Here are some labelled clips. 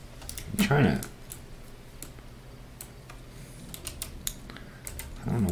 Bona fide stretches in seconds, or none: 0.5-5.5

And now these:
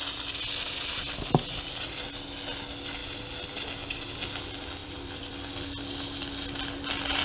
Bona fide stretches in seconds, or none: 0.0-4.8; 5.5-7.2

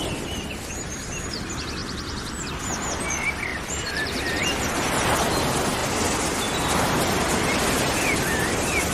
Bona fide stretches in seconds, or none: 0.0-1.8; 2.3-3.5; 4.4-8.9

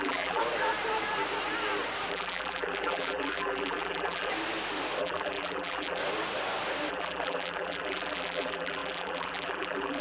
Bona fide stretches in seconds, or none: 0.4-2.1; 4.3-5.0; 6.0-6.9

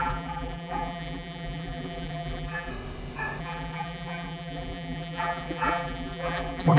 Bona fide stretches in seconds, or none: 2.7-3.4

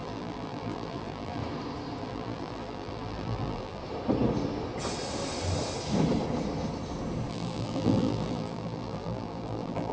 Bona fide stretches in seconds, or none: 1.4-2.0; 3.8-7.3

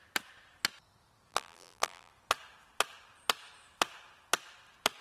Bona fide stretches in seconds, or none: 0.0-1.3; 2.1-5.0

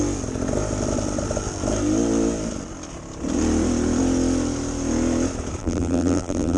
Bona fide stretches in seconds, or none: 0.0-5.6